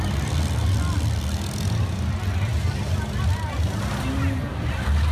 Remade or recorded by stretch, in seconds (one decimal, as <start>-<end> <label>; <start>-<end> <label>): 0.0-5.1 recorded